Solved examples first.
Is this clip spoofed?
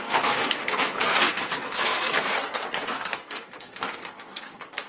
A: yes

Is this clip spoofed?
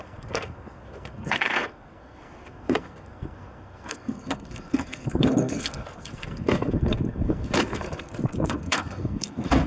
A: yes